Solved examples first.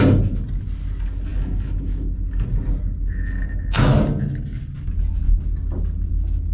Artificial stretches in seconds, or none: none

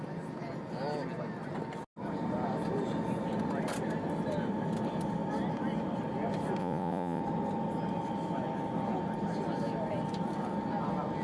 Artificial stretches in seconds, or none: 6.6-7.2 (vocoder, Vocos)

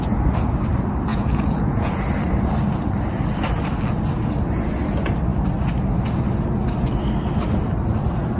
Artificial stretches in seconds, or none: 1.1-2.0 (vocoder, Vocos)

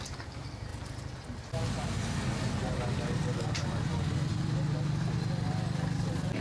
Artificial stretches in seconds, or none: none